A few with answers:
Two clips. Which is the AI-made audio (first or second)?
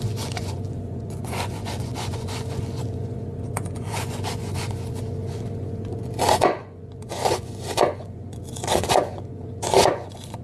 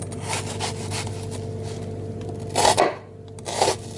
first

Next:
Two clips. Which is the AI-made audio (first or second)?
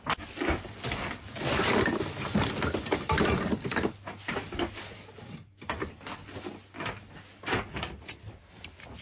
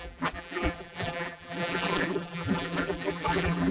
second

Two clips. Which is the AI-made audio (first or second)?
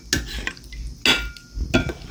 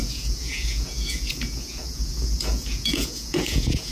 second